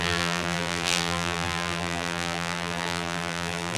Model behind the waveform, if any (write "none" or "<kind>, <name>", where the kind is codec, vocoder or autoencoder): vocoder, BigVGAN v2